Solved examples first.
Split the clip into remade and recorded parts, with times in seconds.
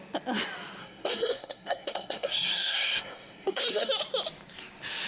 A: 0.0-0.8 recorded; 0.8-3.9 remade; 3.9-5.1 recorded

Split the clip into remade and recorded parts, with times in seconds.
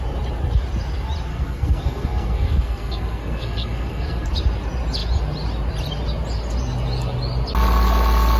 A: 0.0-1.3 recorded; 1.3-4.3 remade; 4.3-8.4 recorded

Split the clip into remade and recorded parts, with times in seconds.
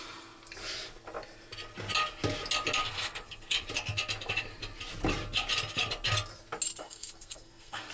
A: 0.0-2.8 recorded; 2.8-3.4 remade; 3.4-6.8 recorded; 6.8-7.9 remade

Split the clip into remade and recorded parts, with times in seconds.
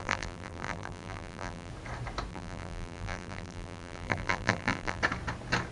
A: 0.0-1.7 remade; 1.7-2.3 recorded; 2.3-5.0 remade; 5.0-5.7 recorded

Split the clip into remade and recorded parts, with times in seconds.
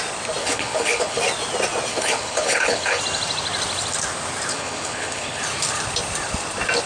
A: 0.0-0.4 recorded; 0.4-1.2 remade; 1.2-1.9 recorded; 1.9-3.0 remade; 3.0-4.5 recorded; 4.5-5.4 remade; 5.4-6.9 recorded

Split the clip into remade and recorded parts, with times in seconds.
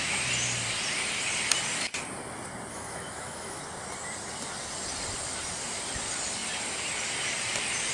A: 0.0-2.7 recorded; 2.7-3.6 remade; 3.6-7.9 recorded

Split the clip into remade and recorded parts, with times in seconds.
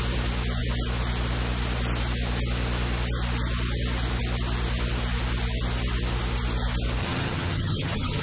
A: 0.0-7.0 recorded; 7.0-8.2 remade